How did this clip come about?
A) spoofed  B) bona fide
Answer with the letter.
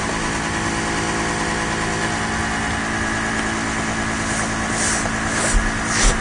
B